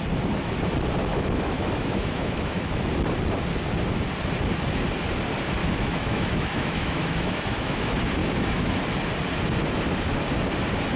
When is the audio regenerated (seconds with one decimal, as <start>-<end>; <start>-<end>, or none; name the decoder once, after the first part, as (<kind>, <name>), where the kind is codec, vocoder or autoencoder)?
1.1-2.9 (autoencoder, DAC-VAE); 5.6-7.8; 8.2-8.8

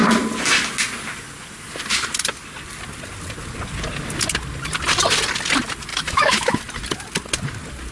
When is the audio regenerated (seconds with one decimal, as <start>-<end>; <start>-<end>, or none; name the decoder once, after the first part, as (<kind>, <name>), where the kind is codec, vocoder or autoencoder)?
5.9-6.6 (autoencoder, DAC-VAE)

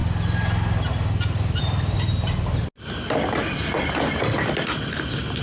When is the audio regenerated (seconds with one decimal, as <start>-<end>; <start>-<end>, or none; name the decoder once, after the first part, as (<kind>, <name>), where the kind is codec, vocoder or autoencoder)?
none